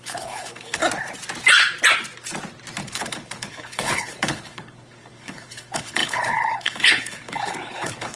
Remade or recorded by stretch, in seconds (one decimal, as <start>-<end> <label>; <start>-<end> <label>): 0.0-0.8 remade; 0.8-2.8 recorded; 2.8-8.2 remade